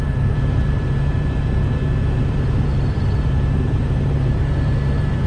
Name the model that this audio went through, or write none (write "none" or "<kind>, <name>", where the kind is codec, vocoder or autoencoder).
vocoder, BigVGAN v2